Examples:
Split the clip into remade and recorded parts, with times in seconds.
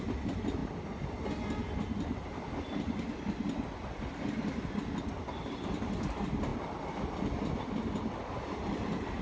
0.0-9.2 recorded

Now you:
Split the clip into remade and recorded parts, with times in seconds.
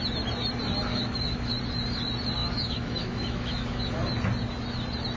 0.0-0.9 recorded; 0.9-1.5 remade; 1.5-2.4 recorded; 2.4-3.8 remade; 3.8-5.2 recorded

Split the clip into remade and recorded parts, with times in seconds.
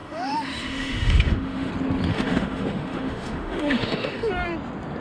0.0-1.7 remade; 1.7-2.1 recorded; 2.1-4.3 remade; 4.3-5.0 recorded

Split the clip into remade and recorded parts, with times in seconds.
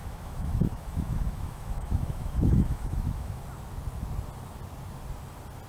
0.0-3.4 remade; 3.4-5.7 recorded